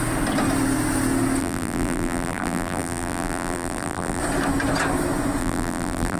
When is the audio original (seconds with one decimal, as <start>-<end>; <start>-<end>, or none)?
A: 0.0-1.4; 4.2-5.4